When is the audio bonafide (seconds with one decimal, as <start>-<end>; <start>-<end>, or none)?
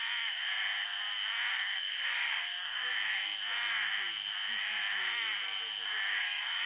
0.5-1.5; 2.9-6.2